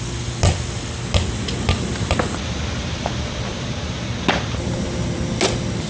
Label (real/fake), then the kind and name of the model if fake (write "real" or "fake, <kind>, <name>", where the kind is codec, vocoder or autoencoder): real